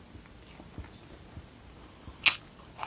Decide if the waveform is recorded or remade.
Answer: recorded